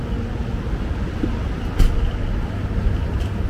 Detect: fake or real real